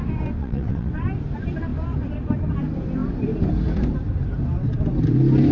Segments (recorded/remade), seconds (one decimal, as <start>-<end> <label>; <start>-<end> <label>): 0.0-0.4 recorded; 0.4-0.9 remade; 0.9-5.5 recorded